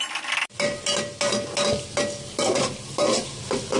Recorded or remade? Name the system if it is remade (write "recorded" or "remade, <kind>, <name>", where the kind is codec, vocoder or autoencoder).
recorded